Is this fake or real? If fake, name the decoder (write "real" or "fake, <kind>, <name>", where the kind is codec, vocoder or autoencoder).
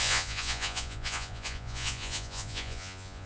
fake, vocoder, Vocos